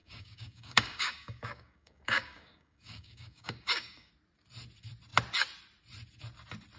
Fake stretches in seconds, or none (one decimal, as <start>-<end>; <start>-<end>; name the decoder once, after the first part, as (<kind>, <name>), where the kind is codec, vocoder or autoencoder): 0.0-4.1 (codec, DAC)